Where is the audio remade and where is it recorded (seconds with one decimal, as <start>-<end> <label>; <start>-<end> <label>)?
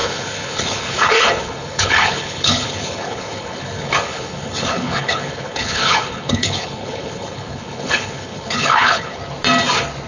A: 0.0-9.2 remade; 9.2-10.1 recorded